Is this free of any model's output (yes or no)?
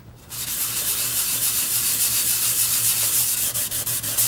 no